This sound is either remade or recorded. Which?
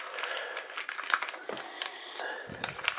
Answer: recorded